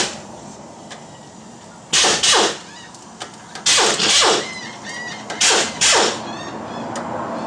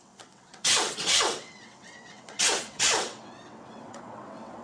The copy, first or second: second